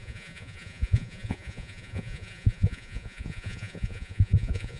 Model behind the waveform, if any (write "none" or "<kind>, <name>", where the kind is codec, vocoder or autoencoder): vocoder, Vocos